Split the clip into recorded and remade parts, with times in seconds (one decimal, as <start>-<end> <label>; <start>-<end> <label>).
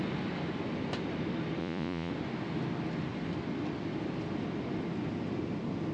0.0-1.6 recorded; 1.6-2.1 remade; 2.1-5.9 recorded